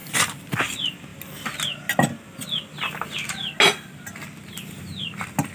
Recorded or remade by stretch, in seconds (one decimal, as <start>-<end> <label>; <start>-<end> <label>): 0.0-0.6 remade; 0.6-5.5 recorded